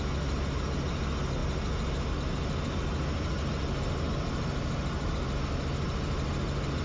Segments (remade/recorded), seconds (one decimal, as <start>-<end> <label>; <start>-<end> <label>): 0.0-6.8 recorded

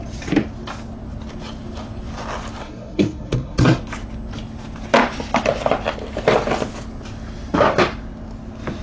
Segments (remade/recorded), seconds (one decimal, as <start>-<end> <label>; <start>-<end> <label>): 0.0-2.6 recorded; 2.6-3.8 remade; 3.8-8.8 recorded